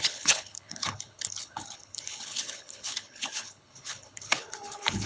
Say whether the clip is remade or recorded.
remade